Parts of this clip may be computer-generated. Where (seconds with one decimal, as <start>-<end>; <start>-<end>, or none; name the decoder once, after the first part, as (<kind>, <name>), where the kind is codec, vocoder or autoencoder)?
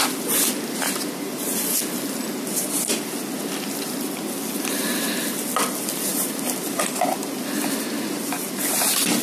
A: none